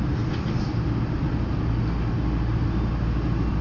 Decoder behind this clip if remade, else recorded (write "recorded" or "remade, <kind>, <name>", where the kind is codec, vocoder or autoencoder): recorded